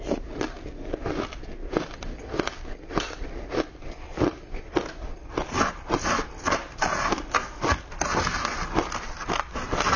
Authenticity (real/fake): real